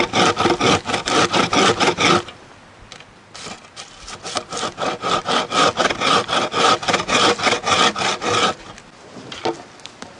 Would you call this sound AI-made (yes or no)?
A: no